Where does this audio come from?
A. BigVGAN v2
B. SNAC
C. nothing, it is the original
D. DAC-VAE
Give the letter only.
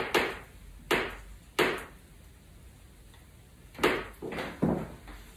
C